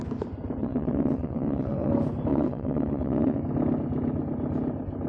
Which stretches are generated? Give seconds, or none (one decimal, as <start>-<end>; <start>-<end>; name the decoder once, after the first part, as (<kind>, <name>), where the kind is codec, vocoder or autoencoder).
0.6-1.9 (vocoder, WaveNeXt); 2.3-3.4